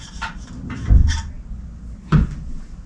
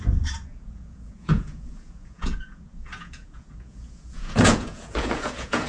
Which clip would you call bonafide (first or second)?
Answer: first